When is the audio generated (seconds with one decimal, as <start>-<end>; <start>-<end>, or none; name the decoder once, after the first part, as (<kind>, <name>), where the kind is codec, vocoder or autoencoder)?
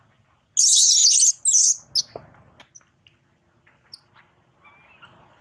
none